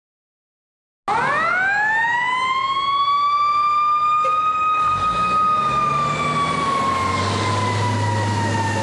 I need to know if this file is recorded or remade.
recorded